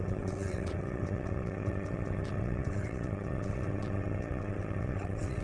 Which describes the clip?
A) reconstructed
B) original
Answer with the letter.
A